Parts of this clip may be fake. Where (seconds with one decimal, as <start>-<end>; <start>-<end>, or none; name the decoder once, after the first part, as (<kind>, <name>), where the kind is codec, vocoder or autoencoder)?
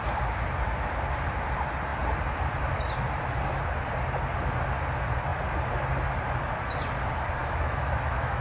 7.4-8.4 (autoencoder, DAC-VAE)